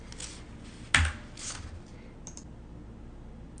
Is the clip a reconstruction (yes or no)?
no